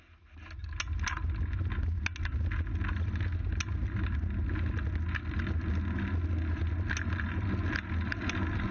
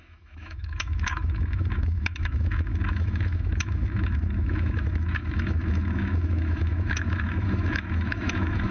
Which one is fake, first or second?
second